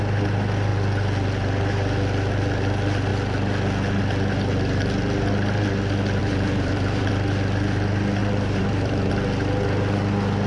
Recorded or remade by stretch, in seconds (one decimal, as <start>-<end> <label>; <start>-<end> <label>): 0.0-6.2 recorded; 6.2-7.1 remade; 7.1-8.2 recorded; 8.2-9.1 remade; 9.1-10.5 recorded